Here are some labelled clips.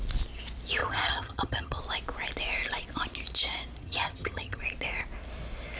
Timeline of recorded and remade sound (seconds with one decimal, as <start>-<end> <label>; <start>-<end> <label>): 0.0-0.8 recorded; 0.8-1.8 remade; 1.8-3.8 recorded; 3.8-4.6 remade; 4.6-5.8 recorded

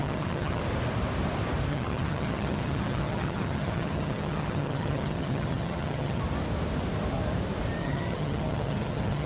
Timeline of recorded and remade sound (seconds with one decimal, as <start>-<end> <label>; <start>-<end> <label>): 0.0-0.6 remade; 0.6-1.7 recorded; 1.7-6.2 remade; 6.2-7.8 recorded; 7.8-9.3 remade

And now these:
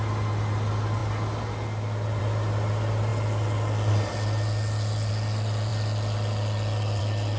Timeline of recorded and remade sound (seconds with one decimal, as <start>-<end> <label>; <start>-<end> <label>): 0.0-7.4 recorded